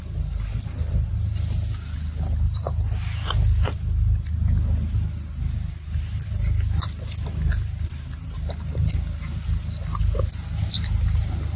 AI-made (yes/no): no